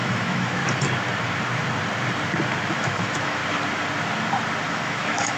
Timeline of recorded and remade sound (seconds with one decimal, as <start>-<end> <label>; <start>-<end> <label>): 0.0-0.6 remade; 0.6-2.8 recorded; 2.8-3.4 remade; 3.4-4.7 recorded; 4.7-5.4 remade